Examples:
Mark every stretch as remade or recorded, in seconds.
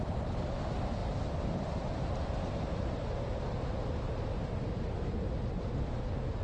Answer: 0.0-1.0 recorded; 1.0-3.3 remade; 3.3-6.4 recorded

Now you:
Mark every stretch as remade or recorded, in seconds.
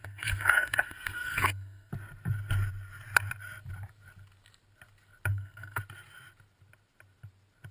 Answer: 0.0-1.9 remade; 1.9-5.3 recorded; 5.3-5.8 remade; 5.8-7.7 recorded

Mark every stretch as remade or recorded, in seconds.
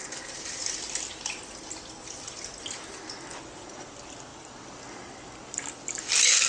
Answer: 0.0-6.5 recorded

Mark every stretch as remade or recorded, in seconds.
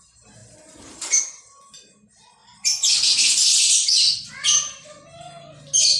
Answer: 0.0-6.0 recorded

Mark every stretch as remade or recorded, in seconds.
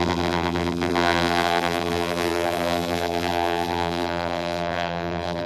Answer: 0.0-5.5 remade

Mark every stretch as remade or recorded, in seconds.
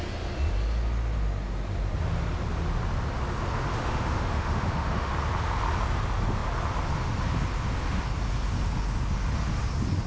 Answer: 0.0-3.7 recorded; 3.7-5.1 remade; 5.1-10.1 recorded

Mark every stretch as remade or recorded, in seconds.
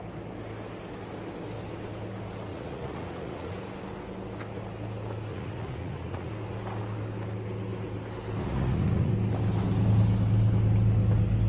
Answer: 0.0-2.5 recorded; 2.5-3.6 remade; 3.6-5.3 recorded; 5.3-6.3 remade; 6.3-8.4 recorded; 8.4-9.1 remade; 9.1-11.5 recorded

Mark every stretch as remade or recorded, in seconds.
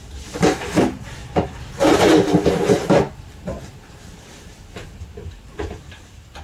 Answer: 0.0-6.4 remade